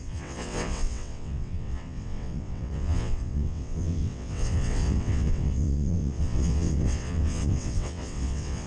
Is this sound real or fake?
fake